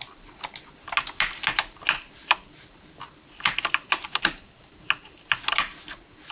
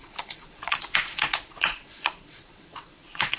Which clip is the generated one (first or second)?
second